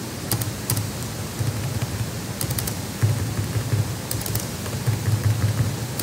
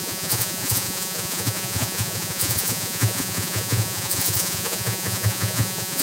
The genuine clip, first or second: first